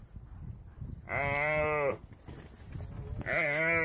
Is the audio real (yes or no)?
yes